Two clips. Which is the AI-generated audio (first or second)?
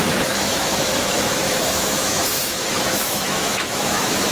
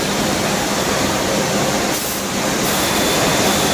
first